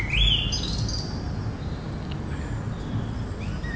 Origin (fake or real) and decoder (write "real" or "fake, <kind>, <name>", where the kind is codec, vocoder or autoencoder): real